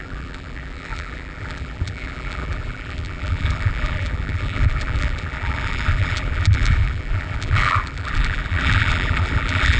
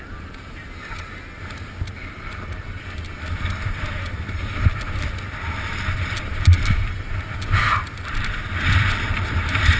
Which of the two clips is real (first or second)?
second